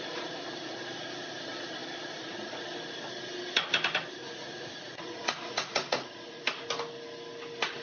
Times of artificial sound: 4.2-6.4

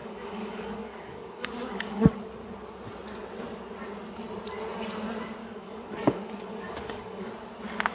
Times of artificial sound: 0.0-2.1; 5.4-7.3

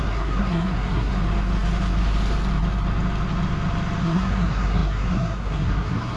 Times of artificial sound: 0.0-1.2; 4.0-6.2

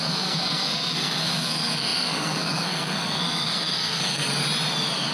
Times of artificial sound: 0.0-4.3

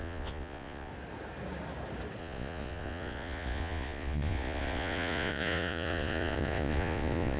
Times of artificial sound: 0.0-0.9; 2.2-7.4